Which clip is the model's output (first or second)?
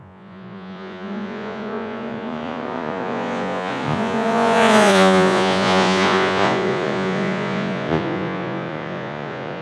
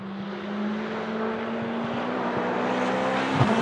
first